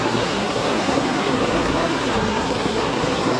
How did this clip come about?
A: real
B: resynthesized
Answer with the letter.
B